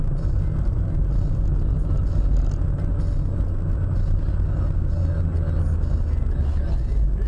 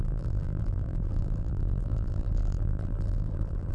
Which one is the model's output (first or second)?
second